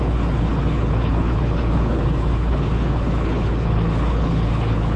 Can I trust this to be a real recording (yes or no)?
no